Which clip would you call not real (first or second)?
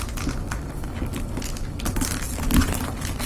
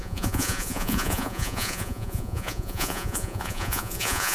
second